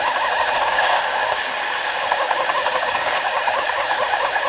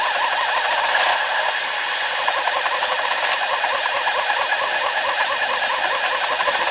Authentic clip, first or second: second